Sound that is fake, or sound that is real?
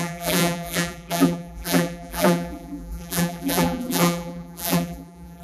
fake